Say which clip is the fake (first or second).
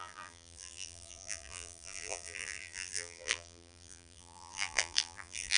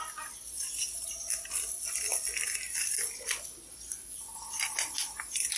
first